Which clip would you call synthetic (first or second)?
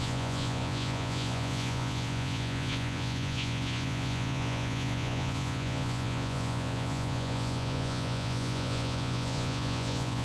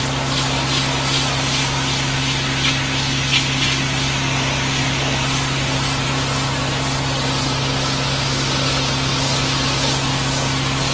first